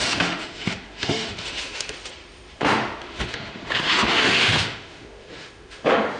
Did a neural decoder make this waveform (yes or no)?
yes